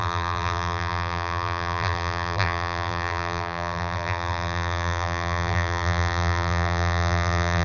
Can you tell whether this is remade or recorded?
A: remade